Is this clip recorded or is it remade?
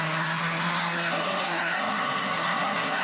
remade